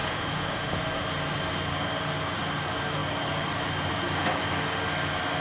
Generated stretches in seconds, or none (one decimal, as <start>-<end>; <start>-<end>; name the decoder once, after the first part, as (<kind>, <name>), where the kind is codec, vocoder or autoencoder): 0.0-0.8 (vocoder, Vocos)